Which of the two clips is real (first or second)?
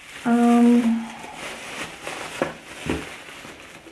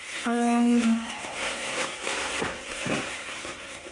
first